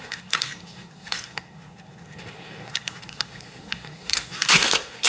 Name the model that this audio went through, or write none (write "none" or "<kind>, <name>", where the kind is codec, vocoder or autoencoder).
codec, SNAC